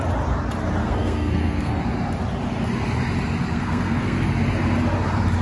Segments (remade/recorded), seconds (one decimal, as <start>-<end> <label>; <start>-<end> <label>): 0.0-0.8 recorded; 0.8-1.8 remade; 1.8-3.5 recorded; 3.5-4.2 remade; 4.2-5.4 recorded